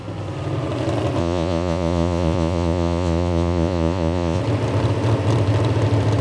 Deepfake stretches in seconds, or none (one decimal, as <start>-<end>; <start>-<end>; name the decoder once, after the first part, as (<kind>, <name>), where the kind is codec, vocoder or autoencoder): 1.2-4.4 (vocoder, Vocos)